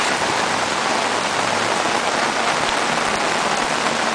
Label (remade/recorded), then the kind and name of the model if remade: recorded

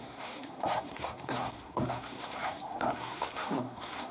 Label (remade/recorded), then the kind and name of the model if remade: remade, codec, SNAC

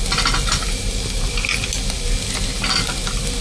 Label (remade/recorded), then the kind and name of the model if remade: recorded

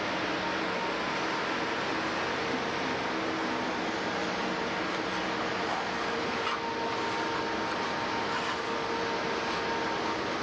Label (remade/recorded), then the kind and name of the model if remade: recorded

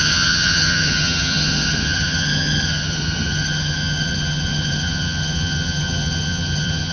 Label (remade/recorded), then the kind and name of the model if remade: remade, vocoder, HiFi-GAN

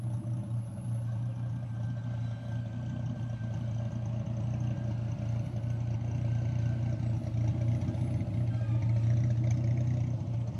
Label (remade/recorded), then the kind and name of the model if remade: recorded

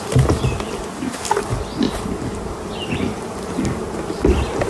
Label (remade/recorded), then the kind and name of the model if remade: recorded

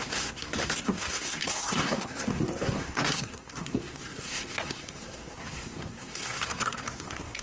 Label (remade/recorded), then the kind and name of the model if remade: remade, codec, SNAC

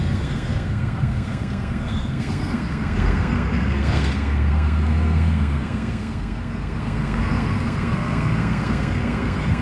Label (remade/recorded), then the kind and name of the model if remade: remade, codec, SNAC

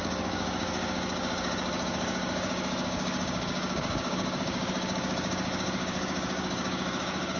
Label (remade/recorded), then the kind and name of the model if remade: remade, codec, DAC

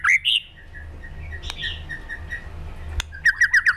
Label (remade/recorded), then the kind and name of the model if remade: recorded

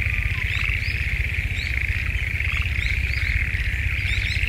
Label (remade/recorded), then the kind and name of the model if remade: recorded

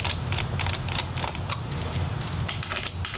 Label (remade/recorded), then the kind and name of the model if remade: recorded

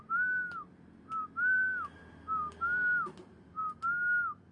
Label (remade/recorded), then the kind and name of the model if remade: recorded